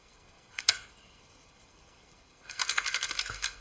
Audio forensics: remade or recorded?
remade